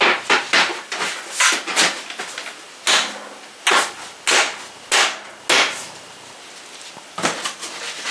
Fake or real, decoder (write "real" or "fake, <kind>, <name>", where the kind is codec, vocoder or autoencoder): real